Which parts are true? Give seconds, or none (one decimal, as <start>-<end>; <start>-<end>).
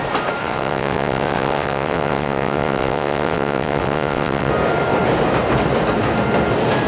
0.0-0.4; 4.5-6.9